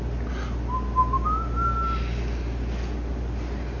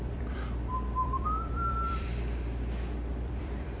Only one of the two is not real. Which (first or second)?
second